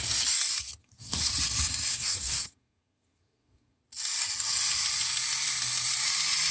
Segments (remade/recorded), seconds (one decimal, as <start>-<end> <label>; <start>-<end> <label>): 0.0-0.8 recorded; 0.8-1.3 remade; 1.3-1.9 recorded; 1.9-3.8 remade; 3.8-6.5 recorded